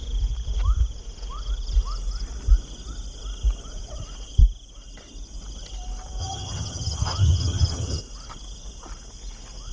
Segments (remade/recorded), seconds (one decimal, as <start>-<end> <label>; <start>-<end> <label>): 0.0-6.2 recorded; 6.2-8.0 remade; 8.0-9.7 recorded